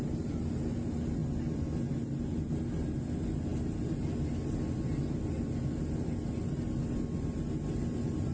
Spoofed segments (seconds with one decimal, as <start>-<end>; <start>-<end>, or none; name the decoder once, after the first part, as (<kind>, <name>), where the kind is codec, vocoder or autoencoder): none